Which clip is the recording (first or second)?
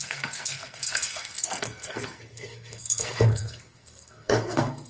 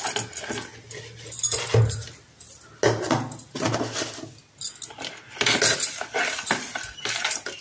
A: second